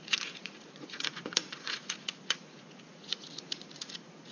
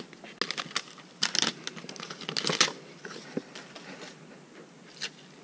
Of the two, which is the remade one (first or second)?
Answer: first